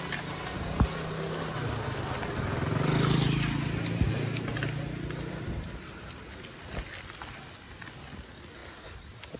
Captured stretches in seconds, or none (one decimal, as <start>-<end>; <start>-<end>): 0.0-9.4